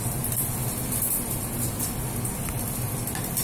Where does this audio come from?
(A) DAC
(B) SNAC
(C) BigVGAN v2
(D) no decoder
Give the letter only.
D